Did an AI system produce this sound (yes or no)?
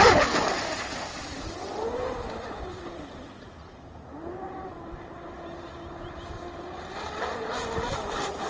no